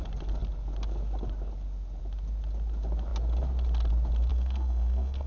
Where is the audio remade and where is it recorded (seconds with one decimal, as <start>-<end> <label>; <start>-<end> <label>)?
0.0-4.3 recorded; 4.3-5.3 remade